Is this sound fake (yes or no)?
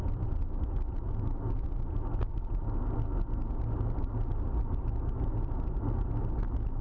no